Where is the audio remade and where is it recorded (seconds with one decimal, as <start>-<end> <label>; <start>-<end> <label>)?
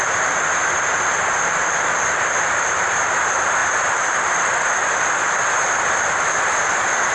0.0-7.1 recorded